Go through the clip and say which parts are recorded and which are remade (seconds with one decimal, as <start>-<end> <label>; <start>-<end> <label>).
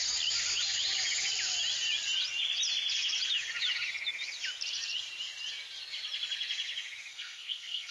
0.0-7.1 recorded; 7.1-7.9 remade